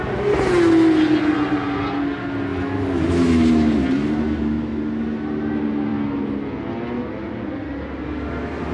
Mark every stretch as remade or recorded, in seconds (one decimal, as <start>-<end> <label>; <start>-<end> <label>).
0.0-8.7 recorded